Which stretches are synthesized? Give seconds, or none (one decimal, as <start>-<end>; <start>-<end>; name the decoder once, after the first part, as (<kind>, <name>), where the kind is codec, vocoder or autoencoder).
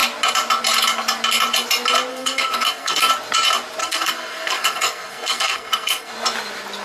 2.1-3.1 (codec, SNAC); 3.8-6.1